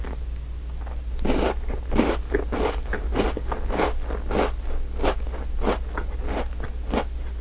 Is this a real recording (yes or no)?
yes